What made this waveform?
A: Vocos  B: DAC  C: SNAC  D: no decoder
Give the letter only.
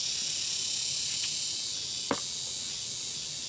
D